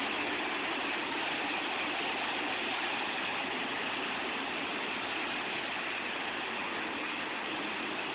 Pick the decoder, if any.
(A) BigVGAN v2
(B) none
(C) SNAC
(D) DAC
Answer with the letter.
B